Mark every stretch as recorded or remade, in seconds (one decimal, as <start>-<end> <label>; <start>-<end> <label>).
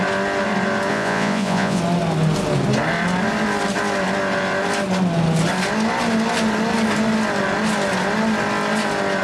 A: 0.0-0.9 recorded; 0.9-1.8 remade; 1.8-9.2 recorded